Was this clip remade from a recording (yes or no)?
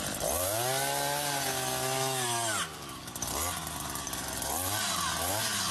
no